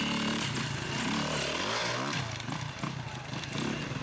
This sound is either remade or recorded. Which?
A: recorded